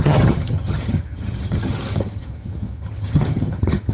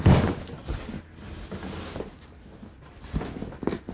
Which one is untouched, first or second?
second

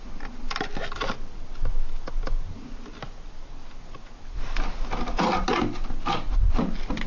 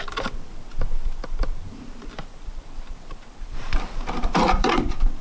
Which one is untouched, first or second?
first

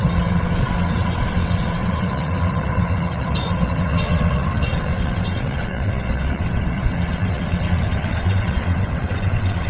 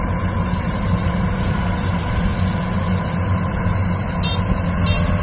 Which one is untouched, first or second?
second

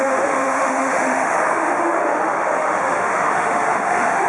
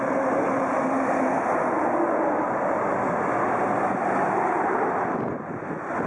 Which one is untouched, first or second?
second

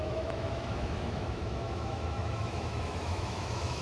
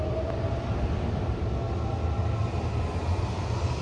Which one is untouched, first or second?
second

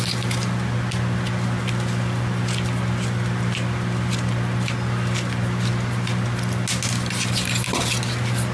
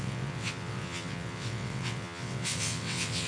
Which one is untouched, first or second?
first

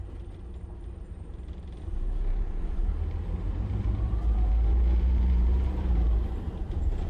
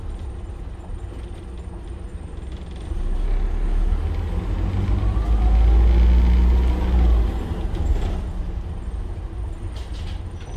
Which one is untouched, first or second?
second